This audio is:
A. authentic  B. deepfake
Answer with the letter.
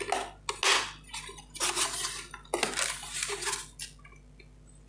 A